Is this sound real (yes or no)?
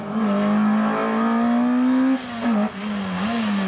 yes